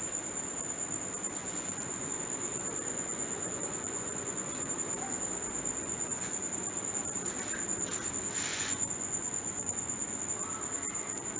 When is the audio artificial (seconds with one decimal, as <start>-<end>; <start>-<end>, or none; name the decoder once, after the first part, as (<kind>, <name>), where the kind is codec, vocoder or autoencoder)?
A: 1.4-2.2 (vocoder, Vocos); 2.9-4.7; 5.8-6.4; 8.5-10.2